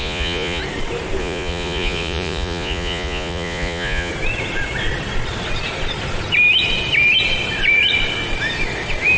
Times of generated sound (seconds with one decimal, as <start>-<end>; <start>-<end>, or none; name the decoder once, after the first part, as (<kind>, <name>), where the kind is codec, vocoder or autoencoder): 0.0-0.6 (vocoder, Vocos); 1.2-4.1